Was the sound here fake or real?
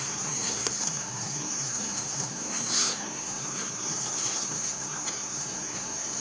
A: fake